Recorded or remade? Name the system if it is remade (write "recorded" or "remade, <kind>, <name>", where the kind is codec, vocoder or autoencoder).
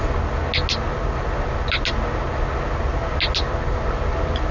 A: recorded